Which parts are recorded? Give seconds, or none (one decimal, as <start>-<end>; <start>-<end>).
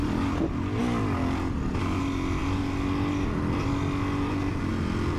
0.0-5.2